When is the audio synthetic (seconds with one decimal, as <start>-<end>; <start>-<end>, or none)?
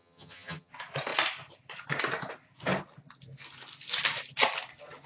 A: 0.0-0.7